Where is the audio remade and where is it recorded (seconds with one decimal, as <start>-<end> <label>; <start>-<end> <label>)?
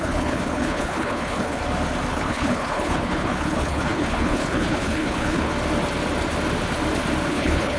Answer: 0.0-1.6 remade; 1.6-2.1 recorded; 2.1-5.5 remade; 5.5-7.3 recorded; 7.3-7.8 remade